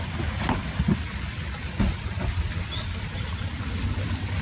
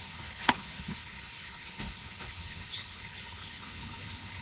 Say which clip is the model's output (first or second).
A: second